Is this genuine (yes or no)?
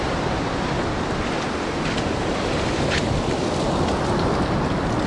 yes